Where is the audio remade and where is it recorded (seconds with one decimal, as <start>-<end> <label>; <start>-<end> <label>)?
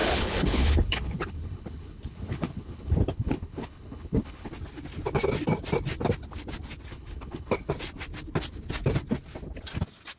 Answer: 0.0-4.5 remade; 4.5-6.9 recorded; 6.9-7.7 remade; 7.7-10.2 recorded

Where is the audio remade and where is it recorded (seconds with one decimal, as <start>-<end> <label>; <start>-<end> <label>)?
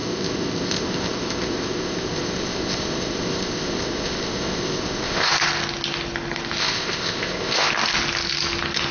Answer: 0.0-5.3 remade; 5.3-6.6 recorded; 6.6-7.7 remade; 7.7-8.9 recorded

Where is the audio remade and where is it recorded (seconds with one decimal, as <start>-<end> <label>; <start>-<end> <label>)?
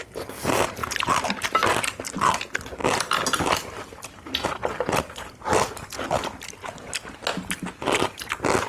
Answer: 0.0-8.7 recorded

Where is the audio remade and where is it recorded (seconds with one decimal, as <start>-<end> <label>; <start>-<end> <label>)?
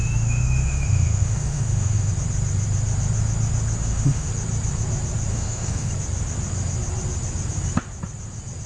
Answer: 0.0-2.1 remade; 2.1-3.8 recorded; 3.8-4.3 remade; 4.3-5.3 recorded; 5.3-5.9 remade; 5.9-8.7 recorded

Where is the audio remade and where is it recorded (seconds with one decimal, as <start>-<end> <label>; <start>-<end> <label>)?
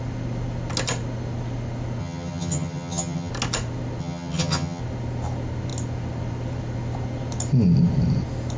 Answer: 0.0-2.0 recorded; 2.0-3.3 remade; 3.3-4.0 recorded; 4.0-4.8 remade; 4.8-8.6 recorded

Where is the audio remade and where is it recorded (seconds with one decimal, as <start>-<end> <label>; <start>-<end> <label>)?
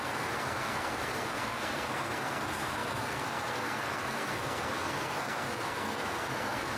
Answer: 0.0-6.8 remade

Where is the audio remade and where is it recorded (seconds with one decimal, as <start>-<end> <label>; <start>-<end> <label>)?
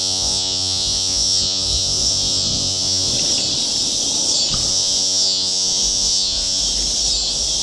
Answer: 0.0-3.1 remade; 3.1-4.7 recorded; 4.7-6.6 remade; 6.6-7.6 recorded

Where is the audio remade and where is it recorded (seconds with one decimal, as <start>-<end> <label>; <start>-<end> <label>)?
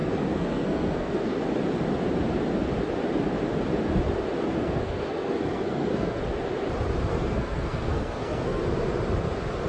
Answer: 0.0-1.4 remade; 1.4-4.5 recorded; 4.5-6.2 remade; 6.2-7.1 recorded; 7.1-8.6 remade; 8.6-9.7 recorded